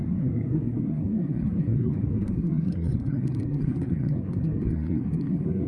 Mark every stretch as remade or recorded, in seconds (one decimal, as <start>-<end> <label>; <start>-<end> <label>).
0.0-5.7 remade